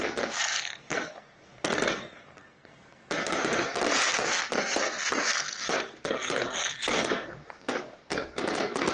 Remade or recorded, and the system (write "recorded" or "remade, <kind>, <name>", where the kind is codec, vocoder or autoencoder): remade, codec, SNAC